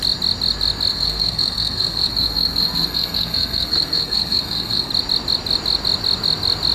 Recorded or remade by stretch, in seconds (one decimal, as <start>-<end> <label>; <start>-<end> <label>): 0.0-0.9 recorded; 0.9-4.9 remade; 4.9-6.7 recorded